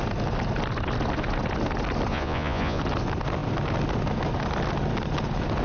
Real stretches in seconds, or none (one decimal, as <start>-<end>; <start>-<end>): 0.0-2.1; 2.8-5.6